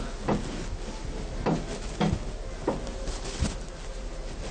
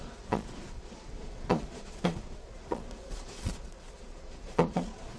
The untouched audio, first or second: first